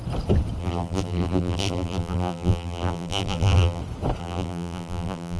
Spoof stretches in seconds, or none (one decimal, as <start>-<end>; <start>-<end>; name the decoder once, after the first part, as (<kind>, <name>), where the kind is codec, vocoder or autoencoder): 0.6-3.8 (vocoder, BigVGAN v2); 4.2-5.4